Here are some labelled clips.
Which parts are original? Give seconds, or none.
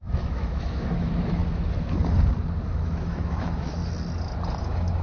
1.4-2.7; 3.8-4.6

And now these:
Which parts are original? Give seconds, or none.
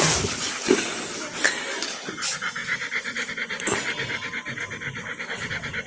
0.0-5.9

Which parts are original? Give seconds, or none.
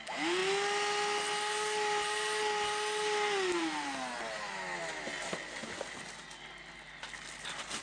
0.0-7.8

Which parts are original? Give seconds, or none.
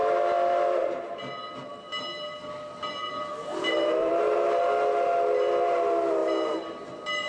0.0-3.3; 4.1-7.3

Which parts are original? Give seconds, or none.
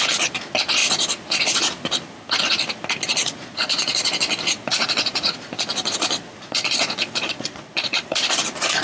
0.0-3.1; 8.2-8.8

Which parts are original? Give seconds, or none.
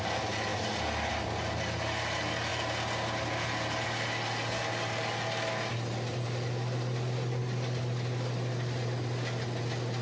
0.0-10.0